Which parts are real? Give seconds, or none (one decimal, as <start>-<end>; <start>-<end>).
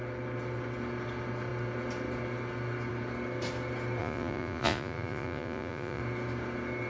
0.0-4.0; 6.0-6.9